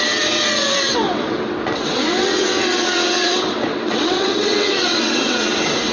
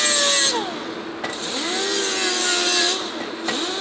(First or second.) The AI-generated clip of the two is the first